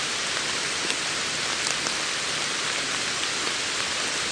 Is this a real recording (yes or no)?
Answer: yes